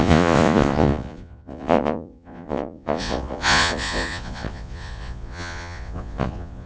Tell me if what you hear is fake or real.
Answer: fake